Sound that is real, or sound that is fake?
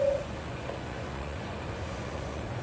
fake